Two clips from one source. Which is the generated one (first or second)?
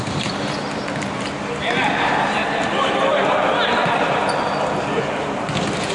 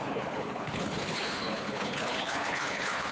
second